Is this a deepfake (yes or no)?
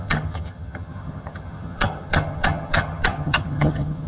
yes